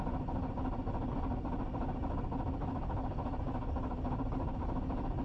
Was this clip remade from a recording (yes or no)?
no